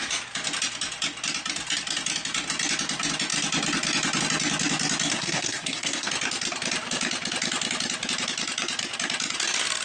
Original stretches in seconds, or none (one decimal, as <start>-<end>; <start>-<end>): 0.0-5.1; 6.1-9.8